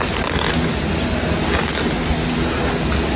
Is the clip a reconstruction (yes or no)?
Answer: no